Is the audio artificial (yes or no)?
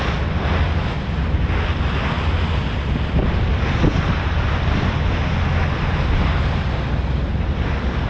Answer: no